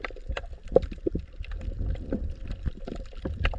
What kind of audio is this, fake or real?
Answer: fake